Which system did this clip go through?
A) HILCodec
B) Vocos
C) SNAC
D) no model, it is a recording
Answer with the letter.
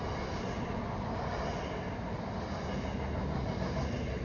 D